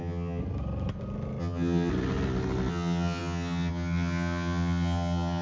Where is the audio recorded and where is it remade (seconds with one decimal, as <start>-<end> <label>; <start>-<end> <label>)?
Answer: 0.0-0.4 remade; 0.4-1.4 recorded; 1.4-1.9 remade; 1.9-2.7 recorded; 2.7-5.4 remade